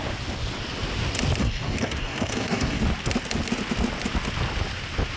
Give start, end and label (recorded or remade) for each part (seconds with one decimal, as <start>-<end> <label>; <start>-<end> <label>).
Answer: 0.0-1.4 recorded; 1.4-2.8 remade; 2.8-5.2 recorded